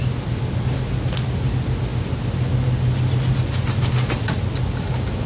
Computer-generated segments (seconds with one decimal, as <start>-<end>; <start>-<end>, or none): none